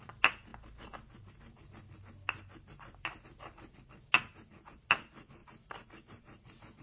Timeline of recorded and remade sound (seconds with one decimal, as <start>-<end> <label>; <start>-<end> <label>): 0.0-5.4 recorded; 5.4-6.8 remade

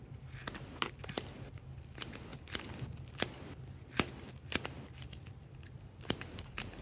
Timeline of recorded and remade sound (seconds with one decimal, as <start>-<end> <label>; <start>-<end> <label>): 0.0-6.8 recorded